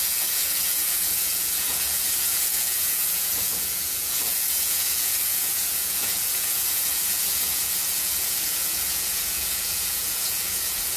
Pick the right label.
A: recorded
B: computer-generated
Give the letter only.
B